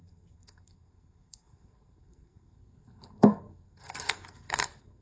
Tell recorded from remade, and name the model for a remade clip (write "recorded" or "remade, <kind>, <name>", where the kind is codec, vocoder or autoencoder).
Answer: remade, codec, SNAC